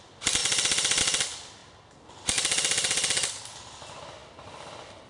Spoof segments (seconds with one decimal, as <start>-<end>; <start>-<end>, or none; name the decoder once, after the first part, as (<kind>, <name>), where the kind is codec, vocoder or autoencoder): none

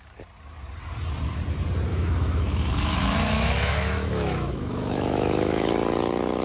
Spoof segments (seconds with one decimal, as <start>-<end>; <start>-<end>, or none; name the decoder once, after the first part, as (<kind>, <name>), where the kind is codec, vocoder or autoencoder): 1.9-5.7 (autoencoder, DAC-VAE)